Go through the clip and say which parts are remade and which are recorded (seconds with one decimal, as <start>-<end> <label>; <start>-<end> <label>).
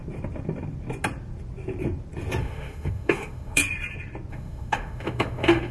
0.0-2.4 recorded; 2.4-3.6 remade; 3.6-4.3 recorded; 4.3-5.7 remade